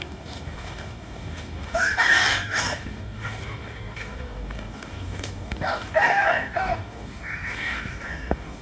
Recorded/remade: remade